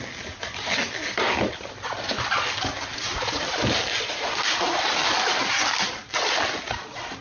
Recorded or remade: recorded